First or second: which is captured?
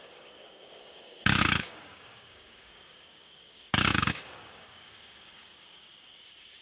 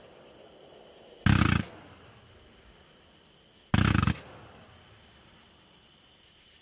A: second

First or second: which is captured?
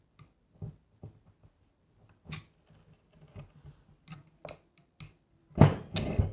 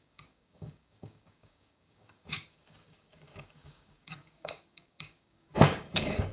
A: first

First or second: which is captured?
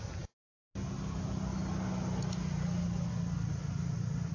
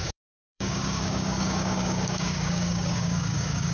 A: first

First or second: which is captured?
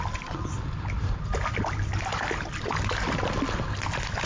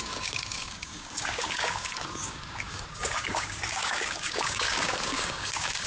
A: first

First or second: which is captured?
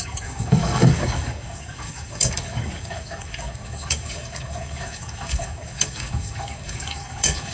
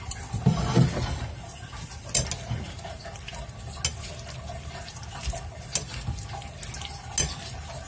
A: second